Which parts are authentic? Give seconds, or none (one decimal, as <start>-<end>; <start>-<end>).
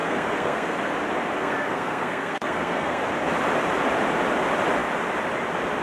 0.9-1.4; 3.0-5.8